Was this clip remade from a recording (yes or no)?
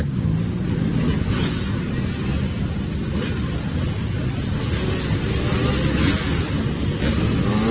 no